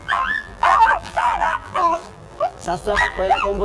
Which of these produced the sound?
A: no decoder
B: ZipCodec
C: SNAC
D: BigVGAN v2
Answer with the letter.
D